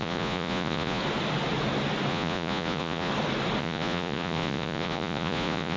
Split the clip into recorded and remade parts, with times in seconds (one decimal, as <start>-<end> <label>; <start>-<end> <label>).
0.0-1.0 remade; 1.0-2.1 recorded; 2.1-3.1 remade; 3.1-3.6 recorded; 3.6-5.8 remade